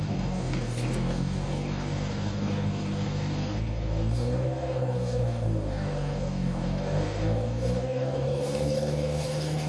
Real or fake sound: fake